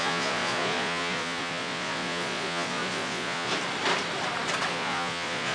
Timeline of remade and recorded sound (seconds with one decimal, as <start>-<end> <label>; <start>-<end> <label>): 0.0-3.5 remade; 3.5-4.7 recorded; 4.7-5.5 remade

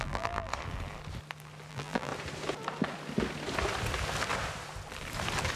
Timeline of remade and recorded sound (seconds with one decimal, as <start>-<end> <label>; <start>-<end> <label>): 0.0-0.5 remade; 0.5-1.7 recorded; 1.7-2.1 remade; 2.1-5.6 recorded

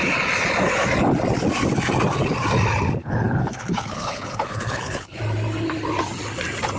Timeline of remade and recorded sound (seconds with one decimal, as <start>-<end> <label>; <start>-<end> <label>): 0.0-3.0 recorded; 3.0-5.2 remade; 5.2-6.8 recorded

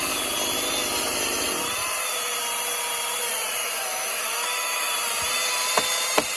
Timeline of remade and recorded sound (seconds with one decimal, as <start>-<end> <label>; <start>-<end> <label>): 0.0-3.6 recorded; 3.6-4.9 remade; 4.9-6.4 recorded

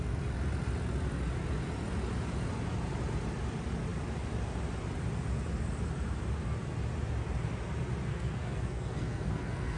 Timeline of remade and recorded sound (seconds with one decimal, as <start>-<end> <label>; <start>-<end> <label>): 0.0-8.1 recorded; 8.1-9.8 remade